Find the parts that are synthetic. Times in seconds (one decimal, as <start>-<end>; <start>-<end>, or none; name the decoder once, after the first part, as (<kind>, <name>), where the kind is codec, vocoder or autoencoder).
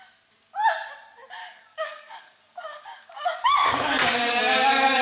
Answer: 1.4-4.4 (codec, DAC)